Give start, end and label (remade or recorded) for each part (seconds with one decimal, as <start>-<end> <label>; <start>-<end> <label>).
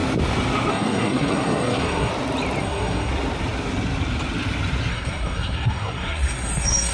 0.0-0.7 recorded; 0.7-2.1 remade; 2.1-2.6 recorded; 2.6-3.1 remade; 3.1-4.9 recorded; 4.9-6.9 remade